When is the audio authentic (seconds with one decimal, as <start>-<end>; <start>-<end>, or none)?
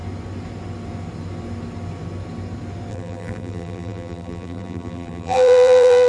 0.0-2.9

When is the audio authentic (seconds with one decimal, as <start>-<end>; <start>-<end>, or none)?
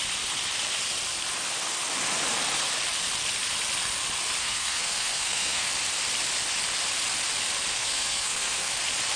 0.0-4.4; 5.7-7.7; 8.7-9.2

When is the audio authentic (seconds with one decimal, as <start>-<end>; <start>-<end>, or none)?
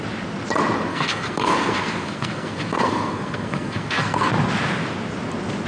0.0-0.9; 4.3-5.7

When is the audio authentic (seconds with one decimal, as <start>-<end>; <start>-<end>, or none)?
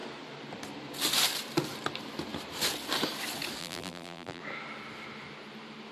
0.0-3.6; 4.4-5.9